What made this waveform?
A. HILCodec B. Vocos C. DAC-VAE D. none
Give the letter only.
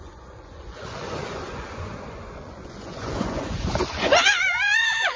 B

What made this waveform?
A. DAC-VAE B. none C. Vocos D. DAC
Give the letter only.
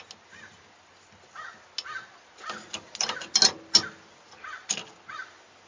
B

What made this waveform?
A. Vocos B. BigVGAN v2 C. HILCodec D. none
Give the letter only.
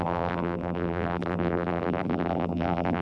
B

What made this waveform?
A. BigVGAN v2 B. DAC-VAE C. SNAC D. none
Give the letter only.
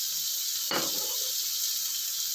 D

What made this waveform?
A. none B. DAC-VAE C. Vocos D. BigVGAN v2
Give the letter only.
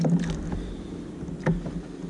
A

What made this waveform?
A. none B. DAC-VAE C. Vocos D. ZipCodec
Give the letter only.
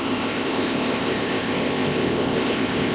D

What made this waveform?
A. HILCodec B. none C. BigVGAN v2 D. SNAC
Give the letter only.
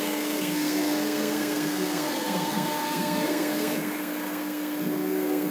D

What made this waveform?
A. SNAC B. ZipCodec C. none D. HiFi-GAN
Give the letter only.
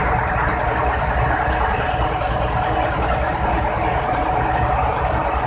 C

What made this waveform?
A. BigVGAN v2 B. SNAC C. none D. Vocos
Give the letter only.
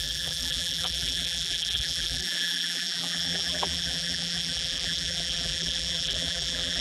A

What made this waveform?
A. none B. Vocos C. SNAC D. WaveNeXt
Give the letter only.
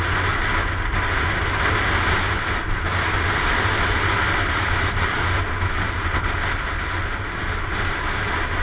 A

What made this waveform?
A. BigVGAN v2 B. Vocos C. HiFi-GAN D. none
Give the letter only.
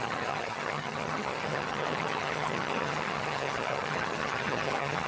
C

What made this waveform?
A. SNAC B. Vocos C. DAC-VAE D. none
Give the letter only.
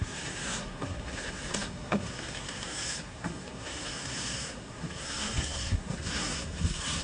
A